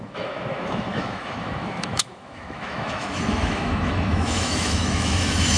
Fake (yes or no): yes